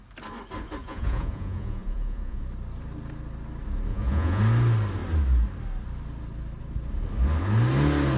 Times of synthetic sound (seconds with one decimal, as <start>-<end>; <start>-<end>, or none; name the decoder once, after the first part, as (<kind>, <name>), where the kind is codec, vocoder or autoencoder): 0.8-2.4 (vocoder, Vocos); 3.9-4.4